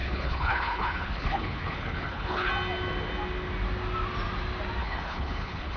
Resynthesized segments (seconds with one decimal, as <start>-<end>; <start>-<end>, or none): 0.0-2.5; 4.8-5.8